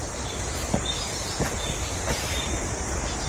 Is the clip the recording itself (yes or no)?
yes